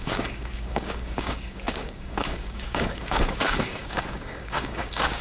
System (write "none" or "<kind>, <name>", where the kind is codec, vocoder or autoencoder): codec, DAC